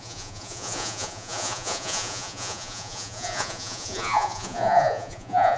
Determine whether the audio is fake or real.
fake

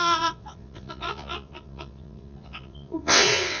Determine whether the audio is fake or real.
fake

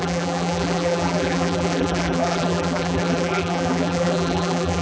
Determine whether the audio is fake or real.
fake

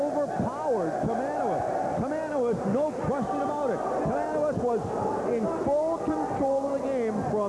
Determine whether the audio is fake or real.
real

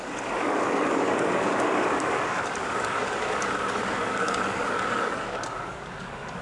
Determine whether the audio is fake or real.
fake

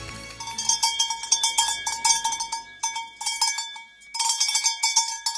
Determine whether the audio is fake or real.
real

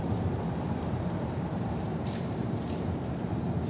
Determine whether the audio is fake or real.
fake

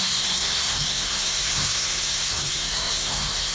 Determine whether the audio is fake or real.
fake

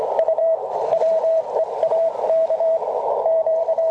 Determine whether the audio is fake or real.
fake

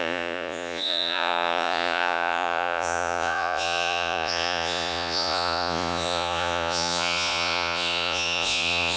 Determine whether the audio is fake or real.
fake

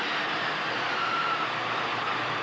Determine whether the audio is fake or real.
real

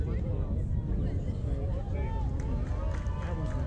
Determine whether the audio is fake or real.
real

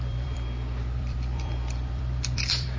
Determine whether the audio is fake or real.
fake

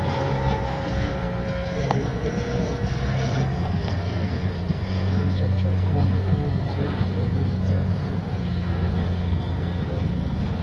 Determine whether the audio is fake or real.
fake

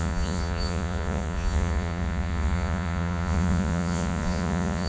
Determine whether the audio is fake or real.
fake